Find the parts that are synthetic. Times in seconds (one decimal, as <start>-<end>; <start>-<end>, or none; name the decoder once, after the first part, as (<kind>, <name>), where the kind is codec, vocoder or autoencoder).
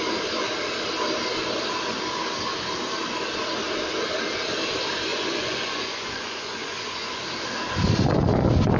5.1-7.2 (vocoder, Vocos)